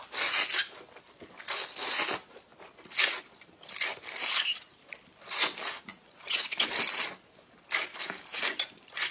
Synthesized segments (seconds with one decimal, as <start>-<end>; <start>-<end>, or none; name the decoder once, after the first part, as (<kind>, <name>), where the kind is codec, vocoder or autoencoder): 5.9-6.7 (vocoder, Vocos); 8.3-9.1